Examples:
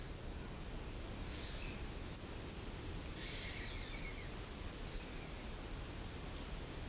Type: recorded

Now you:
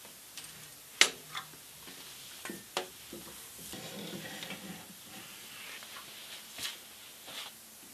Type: recorded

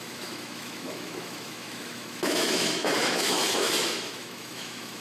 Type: remade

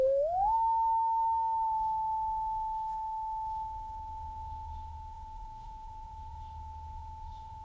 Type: remade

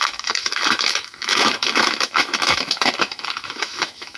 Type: remade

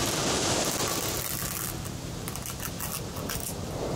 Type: recorded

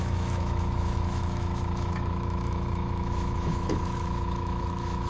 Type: remade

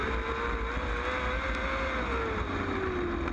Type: recorded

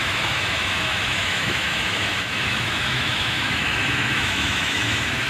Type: remade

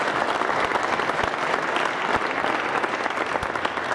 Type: recorded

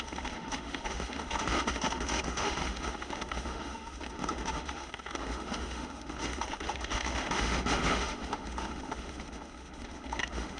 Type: remade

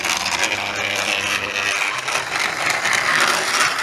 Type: recorded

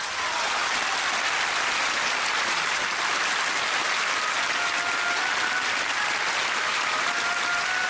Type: recorded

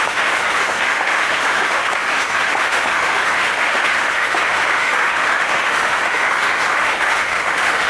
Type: remade